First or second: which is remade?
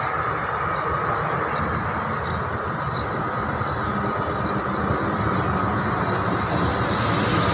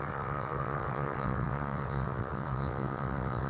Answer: second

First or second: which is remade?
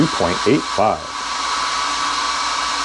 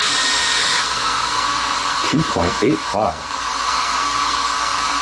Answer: second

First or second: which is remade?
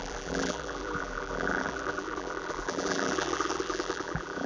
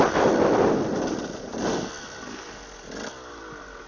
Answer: first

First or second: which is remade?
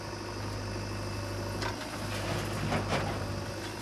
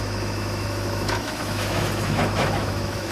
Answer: second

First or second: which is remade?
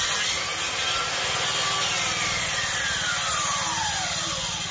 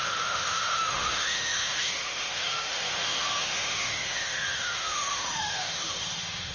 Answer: second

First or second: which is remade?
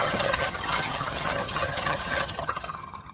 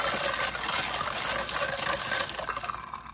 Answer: first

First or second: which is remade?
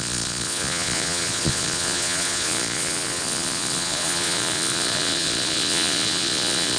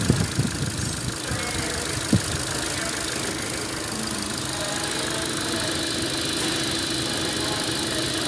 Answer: first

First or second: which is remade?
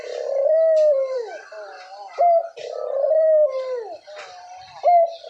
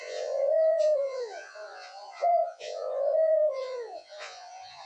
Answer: second